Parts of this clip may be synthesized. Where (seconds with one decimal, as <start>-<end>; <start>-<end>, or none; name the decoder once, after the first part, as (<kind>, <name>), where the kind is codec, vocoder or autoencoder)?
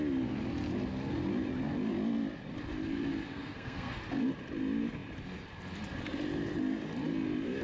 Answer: 3.3-4.0 (codec, SNAC)